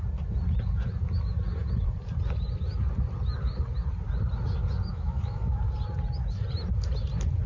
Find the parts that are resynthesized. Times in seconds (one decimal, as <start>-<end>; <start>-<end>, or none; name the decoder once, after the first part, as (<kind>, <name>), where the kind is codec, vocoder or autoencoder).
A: 4.9-5.6 (autoencoder, DAC-VAE)